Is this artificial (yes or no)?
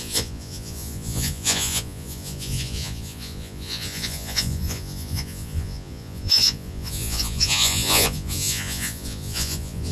yes